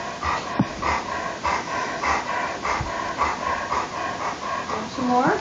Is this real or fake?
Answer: real